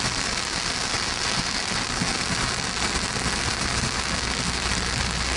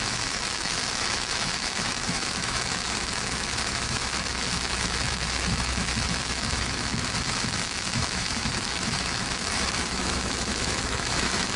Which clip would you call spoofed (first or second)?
second